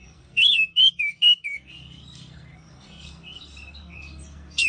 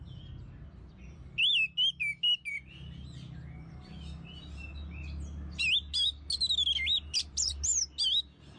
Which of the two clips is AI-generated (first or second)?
first